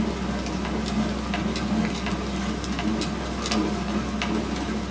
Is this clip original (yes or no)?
yes